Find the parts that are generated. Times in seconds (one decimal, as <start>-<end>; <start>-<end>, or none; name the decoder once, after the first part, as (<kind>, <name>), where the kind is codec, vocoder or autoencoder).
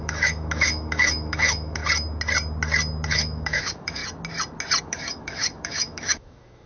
0.0-1.8 (autoencoder, DAC-VAE); 3.1-4.0; 4.8-6.7